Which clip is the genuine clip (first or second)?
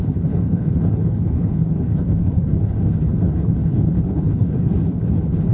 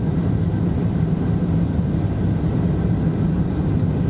second